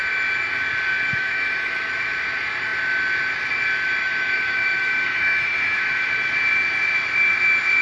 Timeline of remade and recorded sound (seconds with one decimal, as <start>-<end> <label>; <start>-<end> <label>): 0.0-1.1 recorded; 1.1-1.9 remade; 1.9-4.0 recorded; 4.0-6.1 remade; 6.1-7.8 recorded